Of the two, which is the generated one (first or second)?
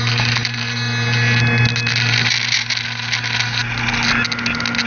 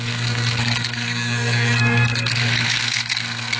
second